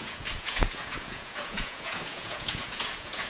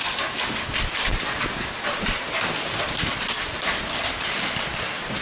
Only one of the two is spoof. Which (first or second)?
first